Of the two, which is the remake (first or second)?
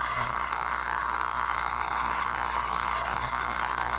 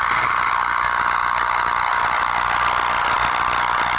first